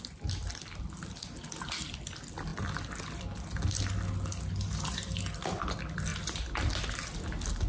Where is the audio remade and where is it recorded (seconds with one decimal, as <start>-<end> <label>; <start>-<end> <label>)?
0.0-7.7 recorded